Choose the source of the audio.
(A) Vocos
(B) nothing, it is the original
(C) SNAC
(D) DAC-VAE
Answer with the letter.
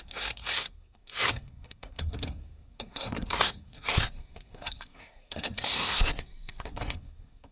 C